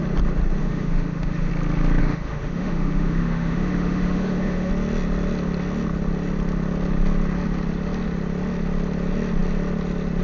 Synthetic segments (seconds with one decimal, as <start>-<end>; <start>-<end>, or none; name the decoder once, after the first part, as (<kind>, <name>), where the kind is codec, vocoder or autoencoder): 0.6-1.5 (autoencoder, DAC-VAE); 2.0-4.7